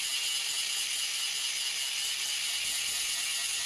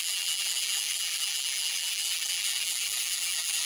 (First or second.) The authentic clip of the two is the first